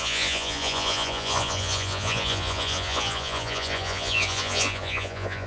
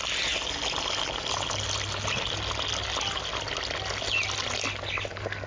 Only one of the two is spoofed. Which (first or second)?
first